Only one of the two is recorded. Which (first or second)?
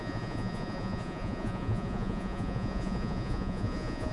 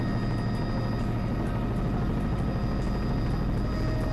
second